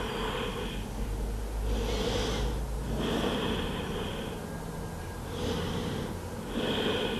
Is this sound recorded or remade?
recorded